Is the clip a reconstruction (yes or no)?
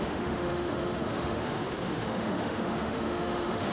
yes